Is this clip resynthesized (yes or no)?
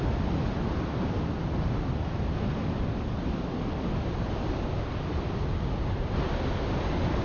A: no